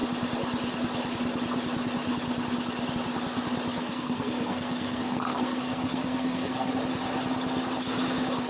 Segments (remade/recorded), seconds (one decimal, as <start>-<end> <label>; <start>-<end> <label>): 0.0-3.8 recorded; 3.8-6.7 remade; 6.7-8.5 recorded

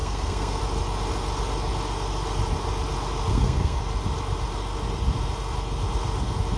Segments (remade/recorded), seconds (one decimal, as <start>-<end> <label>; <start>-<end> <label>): 0.0-0.6 remade; 0.6-3.3 recorded; 3.3-3.8 remade; 3.8-6.6 recorded